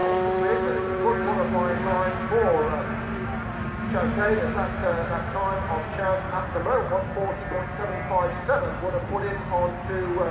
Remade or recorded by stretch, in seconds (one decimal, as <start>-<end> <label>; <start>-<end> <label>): 0.0-10.3 recorded